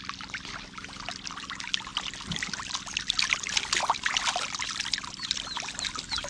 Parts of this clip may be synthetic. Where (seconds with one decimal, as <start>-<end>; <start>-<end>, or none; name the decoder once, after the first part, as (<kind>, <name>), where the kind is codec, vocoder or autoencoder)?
none